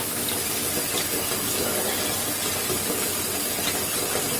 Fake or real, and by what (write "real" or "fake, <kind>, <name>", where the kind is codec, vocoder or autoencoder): real